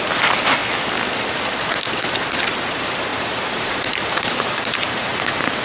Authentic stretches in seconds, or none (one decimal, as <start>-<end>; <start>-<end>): 0.0-3.1

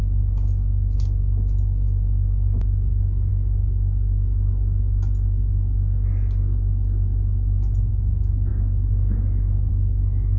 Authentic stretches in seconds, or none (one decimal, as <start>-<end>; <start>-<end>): 0.0-10.4

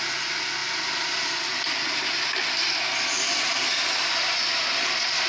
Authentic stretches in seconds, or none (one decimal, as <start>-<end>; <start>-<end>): 0.0-5.3

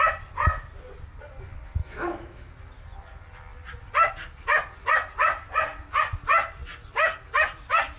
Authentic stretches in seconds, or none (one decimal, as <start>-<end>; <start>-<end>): 0.0-1.8; 2.5-8.0

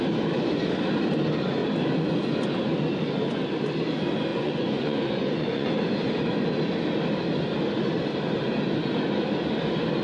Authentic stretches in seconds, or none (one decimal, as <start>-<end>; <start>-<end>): 0.0-4.3; 5.7-10.0

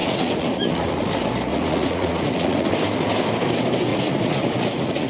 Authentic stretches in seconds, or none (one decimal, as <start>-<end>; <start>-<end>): 1.0-1.5; 2.7-3.9

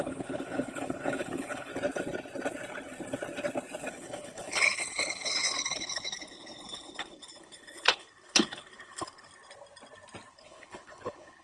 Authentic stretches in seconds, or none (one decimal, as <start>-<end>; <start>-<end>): 1.7-3.9; 9.3-10.3

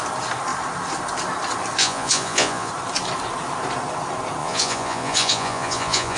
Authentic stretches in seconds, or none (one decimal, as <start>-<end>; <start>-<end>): 0.0-1.8; 2.7-4.4